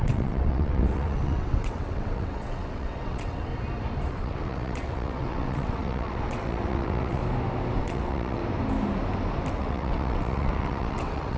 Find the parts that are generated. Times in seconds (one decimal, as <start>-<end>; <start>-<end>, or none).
0.0-3.5; 4.1-7.2; 7.8-8.4; 9.5-11.4